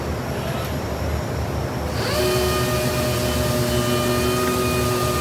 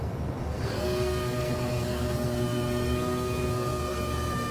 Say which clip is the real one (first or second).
first